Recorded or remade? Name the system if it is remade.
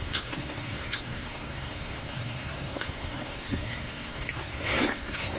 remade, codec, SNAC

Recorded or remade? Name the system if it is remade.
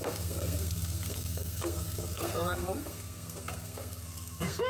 remade, codec, SNAC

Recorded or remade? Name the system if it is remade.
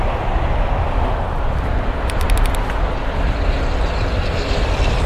recorded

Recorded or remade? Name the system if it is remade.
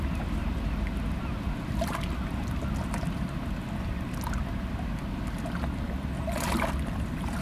recorded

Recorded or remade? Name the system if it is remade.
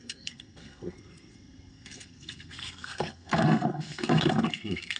remade, codec, SNAC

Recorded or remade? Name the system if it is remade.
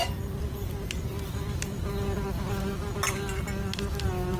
recorded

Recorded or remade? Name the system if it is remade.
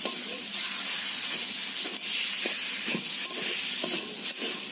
recorded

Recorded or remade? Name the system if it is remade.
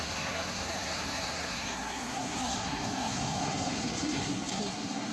remade, codec, SNAC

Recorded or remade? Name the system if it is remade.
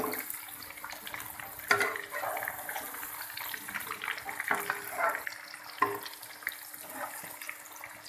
recorded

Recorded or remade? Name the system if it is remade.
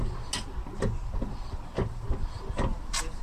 recorded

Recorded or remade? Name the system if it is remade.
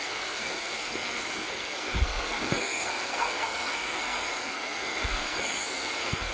remade, codec, SNAC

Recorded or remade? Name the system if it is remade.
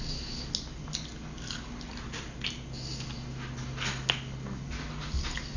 recorded